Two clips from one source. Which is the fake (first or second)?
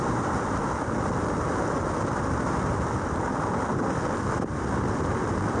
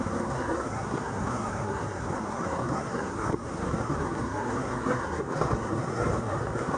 second